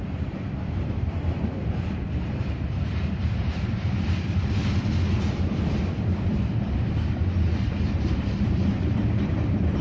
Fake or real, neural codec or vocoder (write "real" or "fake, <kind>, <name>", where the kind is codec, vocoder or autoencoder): fake, vocoder, BigVGAN v2